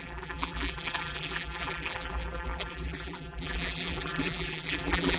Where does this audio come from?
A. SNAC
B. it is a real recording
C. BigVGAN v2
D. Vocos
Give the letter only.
C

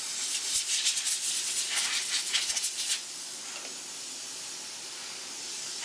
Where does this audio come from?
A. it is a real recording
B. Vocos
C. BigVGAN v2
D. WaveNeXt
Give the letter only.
A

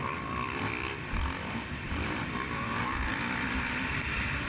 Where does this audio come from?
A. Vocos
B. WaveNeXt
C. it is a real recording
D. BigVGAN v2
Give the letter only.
C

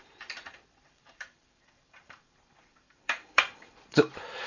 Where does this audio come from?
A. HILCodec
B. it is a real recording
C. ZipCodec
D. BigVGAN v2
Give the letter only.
D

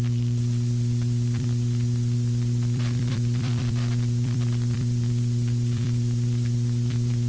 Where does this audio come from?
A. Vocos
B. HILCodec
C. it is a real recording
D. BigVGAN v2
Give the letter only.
D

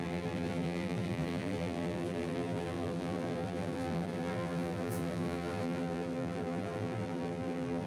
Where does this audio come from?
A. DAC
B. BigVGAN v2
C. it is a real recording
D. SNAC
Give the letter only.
B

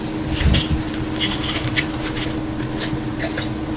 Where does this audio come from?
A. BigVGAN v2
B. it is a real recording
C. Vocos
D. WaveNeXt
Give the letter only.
B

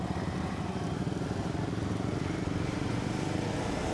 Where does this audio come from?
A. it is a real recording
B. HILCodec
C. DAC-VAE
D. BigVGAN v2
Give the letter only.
D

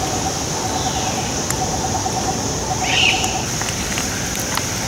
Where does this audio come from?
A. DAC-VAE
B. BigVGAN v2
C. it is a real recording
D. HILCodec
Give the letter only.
C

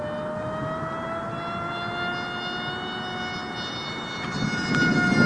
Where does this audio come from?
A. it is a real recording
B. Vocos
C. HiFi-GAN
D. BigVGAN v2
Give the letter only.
A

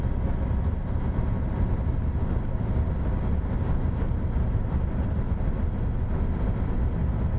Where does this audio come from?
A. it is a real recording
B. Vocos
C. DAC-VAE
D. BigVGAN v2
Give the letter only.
A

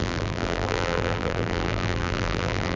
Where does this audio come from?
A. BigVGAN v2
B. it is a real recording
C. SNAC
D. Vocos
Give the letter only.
A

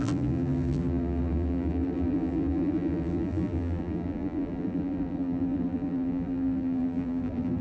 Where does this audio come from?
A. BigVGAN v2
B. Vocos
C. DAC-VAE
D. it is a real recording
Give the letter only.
A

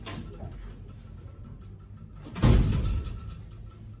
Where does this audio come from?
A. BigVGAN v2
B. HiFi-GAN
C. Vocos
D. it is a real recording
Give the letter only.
D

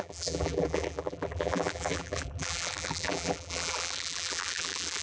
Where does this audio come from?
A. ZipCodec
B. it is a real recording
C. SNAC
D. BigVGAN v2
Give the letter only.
D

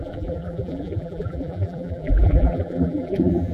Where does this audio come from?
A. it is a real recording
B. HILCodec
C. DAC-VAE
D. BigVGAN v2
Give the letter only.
D